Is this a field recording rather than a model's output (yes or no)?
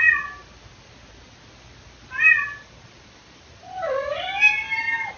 yes